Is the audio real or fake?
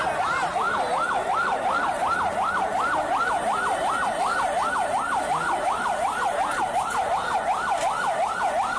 real